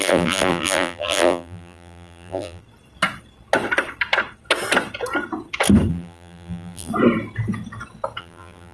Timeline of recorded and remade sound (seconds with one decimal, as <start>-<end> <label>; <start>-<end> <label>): 0.0-2.6 remade; 2.6-5.9 recorded; 5.9-6.9 remade; 6.9-8.2 recorded; 8.2-8.7 remade

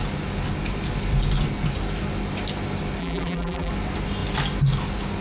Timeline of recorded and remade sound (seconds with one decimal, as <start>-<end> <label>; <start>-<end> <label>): 0.0-3.0 recorded; 3.0-3.7 remade; 3.7-5.2 recorded

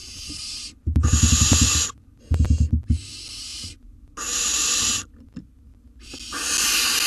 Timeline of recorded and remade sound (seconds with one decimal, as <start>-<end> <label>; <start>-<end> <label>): 0.0-2.2 remade; 2.2-3.5 recorded; 3.5-5.1 remade; 5.1-7.1 recorded

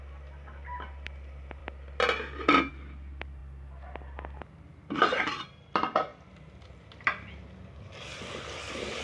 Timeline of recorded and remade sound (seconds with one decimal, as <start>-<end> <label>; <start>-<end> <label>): 0.0-1.6 remade; 1.6-2.7 recorded; 2.7-3.4 remade; 3.4-4.7 recorded; 4.7-9.0 remade

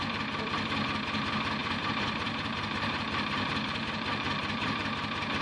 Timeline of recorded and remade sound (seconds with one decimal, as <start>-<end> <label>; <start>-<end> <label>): 0.0-1.6 recorded; 1.6-4.8 remade; 4.8-5.4 recorded

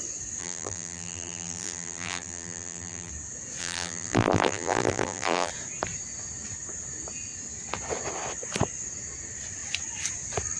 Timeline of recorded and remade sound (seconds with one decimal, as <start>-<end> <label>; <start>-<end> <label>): 0.0-0.4 recorded; 0.4-3.1 remade; 3.1-3.6 recorded; 3.6-5.5 remade; 5.5-10.6 recorded